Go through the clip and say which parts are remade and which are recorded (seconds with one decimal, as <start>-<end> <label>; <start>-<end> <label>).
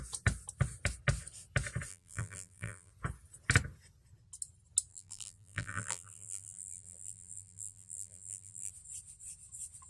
0.0-1.9 recorded; 1.9-2.9 remade; 2.9-4.9 recorded; 4.9-8.7 remade; 8.7-9.9 recorded